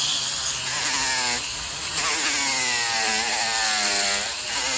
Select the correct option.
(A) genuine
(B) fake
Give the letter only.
A